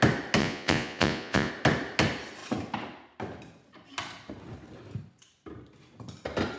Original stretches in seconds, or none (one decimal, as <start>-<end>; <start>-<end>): 0.0-0.4; 1.5-6.6